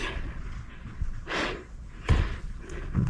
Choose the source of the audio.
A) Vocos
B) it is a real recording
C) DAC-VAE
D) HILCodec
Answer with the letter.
A